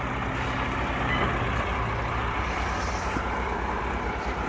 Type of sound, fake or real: real